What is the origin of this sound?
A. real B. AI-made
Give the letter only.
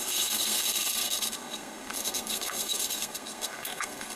B